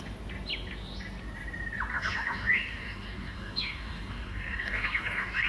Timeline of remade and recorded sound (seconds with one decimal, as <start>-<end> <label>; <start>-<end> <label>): 0.0-1.9 recorded; 1.9-5.5 remade